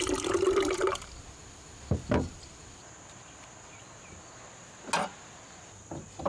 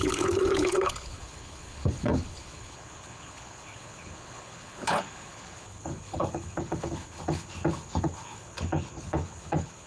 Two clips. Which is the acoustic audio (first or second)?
first